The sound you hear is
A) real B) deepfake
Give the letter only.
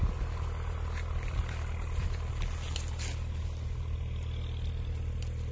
A